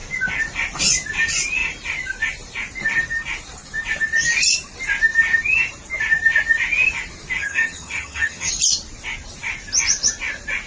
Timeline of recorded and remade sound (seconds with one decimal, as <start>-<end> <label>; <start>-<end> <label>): 0.0-7.4 recorded; 7.4-8.5 remade; 8.5-10.7 recorded